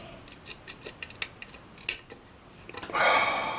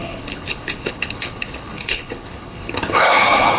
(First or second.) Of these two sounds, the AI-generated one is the second